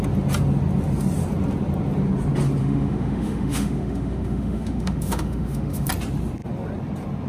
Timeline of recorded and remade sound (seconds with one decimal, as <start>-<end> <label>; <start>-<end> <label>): 0.0-2.6 recorded; 2.6-5.9 remade; 5.9-7.3 recorded